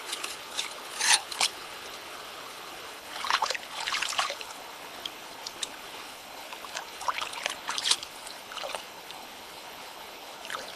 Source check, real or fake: fake